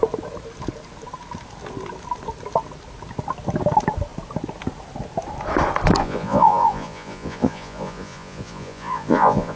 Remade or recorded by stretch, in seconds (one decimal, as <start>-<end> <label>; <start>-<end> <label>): 0.0-6.0 recorded; 6.0-9.6 remade